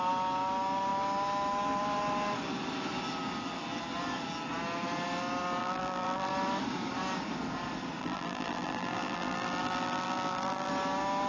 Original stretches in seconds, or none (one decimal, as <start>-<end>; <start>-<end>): 0.0-5.6; 6.3-8.0; 10.7-11.3